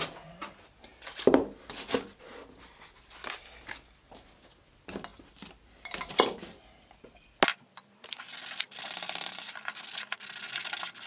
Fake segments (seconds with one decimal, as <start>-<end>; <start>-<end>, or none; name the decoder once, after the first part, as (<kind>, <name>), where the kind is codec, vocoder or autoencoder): 5.1-6.6 (vocoder, BigVGAN v2); 7.5-9.8